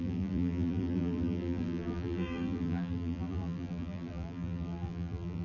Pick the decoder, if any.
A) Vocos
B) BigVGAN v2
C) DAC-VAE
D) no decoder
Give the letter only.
B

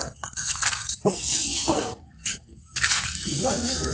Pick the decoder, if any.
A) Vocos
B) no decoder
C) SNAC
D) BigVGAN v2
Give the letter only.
C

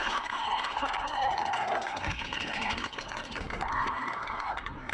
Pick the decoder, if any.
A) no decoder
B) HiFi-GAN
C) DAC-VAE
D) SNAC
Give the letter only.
D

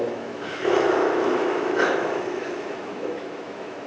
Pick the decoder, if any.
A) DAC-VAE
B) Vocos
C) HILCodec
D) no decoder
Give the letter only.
A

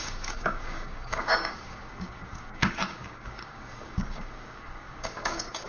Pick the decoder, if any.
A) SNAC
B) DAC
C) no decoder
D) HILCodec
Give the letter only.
B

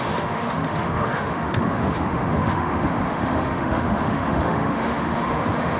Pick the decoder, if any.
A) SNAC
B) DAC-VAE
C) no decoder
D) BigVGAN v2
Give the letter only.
B